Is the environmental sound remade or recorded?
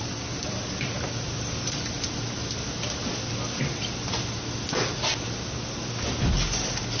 recorded